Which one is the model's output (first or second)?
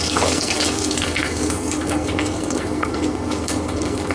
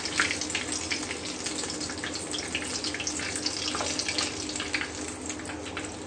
first